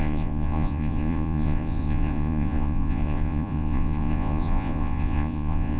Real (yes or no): no